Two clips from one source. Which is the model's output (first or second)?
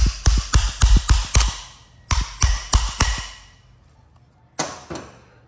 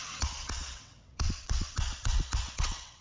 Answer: second